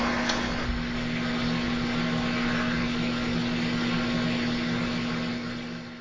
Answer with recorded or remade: recorded